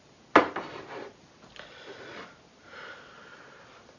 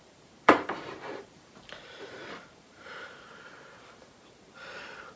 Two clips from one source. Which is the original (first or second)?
first